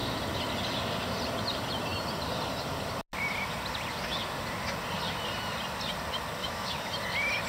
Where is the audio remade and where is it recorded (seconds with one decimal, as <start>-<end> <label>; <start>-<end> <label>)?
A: 0.0-6.4 recorded; 6.4-6.9 remade; 6.9-7.5 recorded